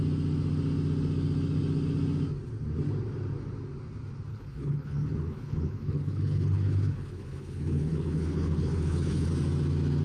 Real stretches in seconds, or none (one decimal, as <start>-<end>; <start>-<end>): 0.0-4.3; 9.3-10.0